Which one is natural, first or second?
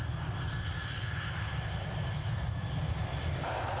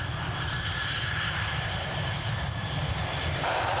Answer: first